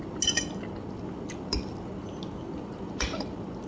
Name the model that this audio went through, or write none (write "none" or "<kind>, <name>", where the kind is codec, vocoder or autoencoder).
none